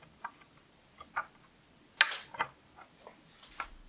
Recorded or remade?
recorded